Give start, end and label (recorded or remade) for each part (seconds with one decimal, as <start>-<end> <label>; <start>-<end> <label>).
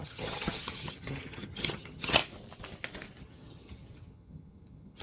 0.0-2.2 remade; 2.2-3.2 recorded; 3.2-5.0 remade